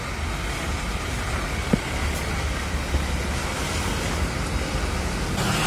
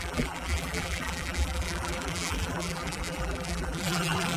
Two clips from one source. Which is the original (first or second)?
first